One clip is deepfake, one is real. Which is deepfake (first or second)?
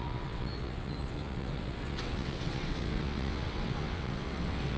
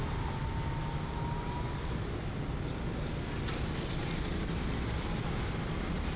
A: first